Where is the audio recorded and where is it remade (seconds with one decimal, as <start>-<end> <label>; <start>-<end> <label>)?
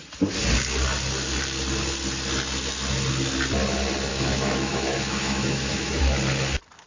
0.0-4.1 recorded; 4.1-6.0 remade; 6.0-6.9 recorded